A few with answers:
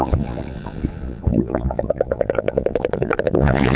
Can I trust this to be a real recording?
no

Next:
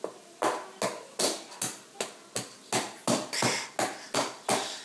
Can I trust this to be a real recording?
yes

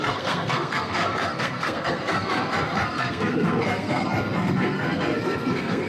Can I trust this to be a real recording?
no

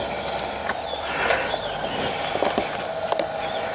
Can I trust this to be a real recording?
no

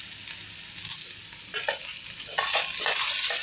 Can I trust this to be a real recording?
yes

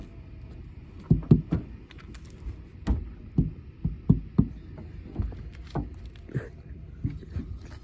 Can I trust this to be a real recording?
yes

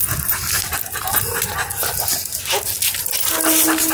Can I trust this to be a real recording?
yes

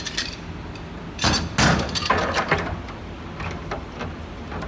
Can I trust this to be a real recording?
yes